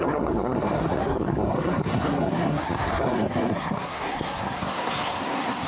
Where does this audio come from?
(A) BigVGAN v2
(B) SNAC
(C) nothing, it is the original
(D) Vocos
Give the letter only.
B